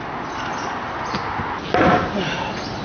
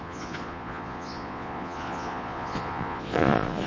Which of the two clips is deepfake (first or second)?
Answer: second